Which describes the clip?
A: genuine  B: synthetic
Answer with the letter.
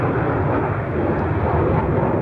A